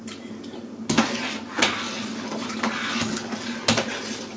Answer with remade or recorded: recorded